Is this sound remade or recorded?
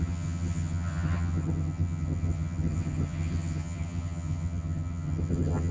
remade